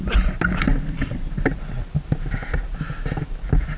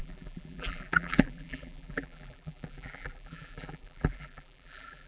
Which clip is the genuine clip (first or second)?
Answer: first